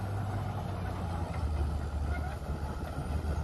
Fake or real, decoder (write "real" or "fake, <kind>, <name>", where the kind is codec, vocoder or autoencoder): real